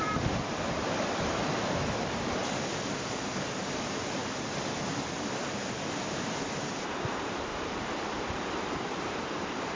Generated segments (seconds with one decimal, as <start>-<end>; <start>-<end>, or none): 0.0-9.8